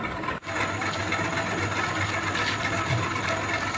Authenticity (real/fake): real